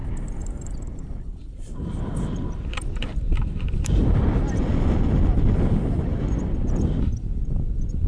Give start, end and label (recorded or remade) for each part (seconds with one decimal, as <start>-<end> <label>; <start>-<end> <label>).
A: 0.0-1.8 recorded; 1.8-8.1 remade

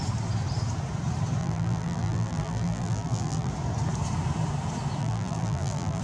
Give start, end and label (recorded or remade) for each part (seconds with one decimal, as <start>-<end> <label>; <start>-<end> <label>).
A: 0.0-1.4 recorded; 1.4-3.5 remade; 3.5-5.0 recorded; 5.0-6.0 remade

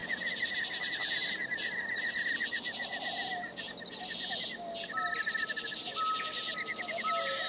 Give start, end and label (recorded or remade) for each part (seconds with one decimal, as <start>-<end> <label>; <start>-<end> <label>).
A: 0.0-7.5 recorded